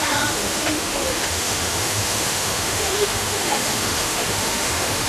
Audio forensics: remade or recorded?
remade